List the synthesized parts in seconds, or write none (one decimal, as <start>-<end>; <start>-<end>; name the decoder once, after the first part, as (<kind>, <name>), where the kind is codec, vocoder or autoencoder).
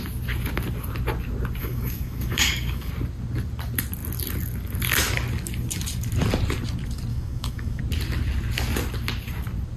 1.6-2.9 (codec, DAC); 7.1-7.8